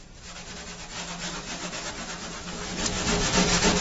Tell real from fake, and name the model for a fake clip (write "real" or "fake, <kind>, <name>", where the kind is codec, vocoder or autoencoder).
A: real